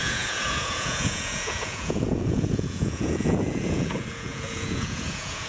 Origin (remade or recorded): remade